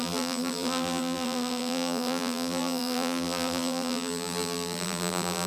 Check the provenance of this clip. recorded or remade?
remade